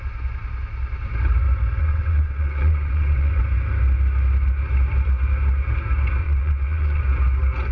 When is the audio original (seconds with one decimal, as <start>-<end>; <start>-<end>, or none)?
0.0-1.8; 3.4-6.2; 7.0-7.7